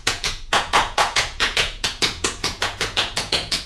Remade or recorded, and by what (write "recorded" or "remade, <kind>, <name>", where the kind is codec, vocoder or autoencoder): remade, vocoder, Vocos